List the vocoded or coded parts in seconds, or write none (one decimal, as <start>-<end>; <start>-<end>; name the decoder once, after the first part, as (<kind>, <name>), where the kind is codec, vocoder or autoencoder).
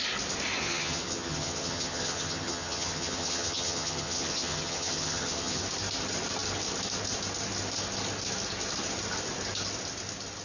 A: 0.6-5.6 (vocoder, HiFi-GAN)